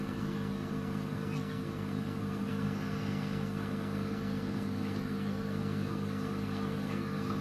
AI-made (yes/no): yes